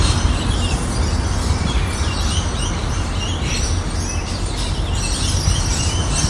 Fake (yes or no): no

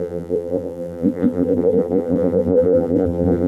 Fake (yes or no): yes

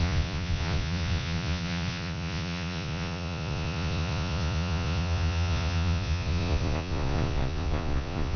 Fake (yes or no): yes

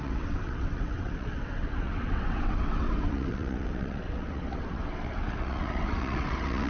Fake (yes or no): yes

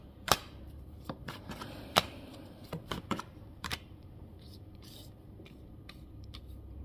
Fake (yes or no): yes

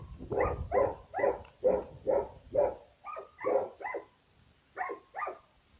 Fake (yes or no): no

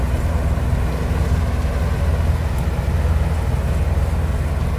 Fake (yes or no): no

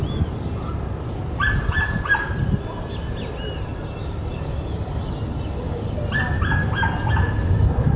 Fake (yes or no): no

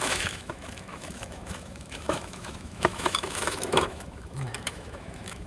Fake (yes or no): yes